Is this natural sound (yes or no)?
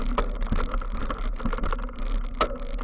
yes